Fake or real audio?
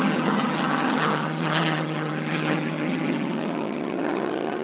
fake